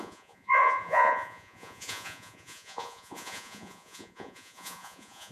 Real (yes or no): no